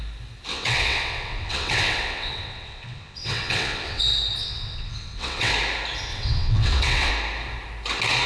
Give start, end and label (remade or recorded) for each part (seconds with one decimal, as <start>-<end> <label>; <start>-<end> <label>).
0.0-0.5 recorded; 0.5-4.0 remade; 4.0-4.4 recorded; 4.4-5.5 remade; 5.5-6.1 recorded; 6.1-7.1 remade; 7.1-8.3 recorded